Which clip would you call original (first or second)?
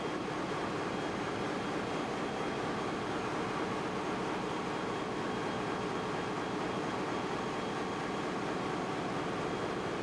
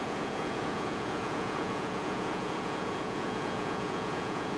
first